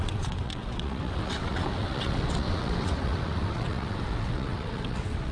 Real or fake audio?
fake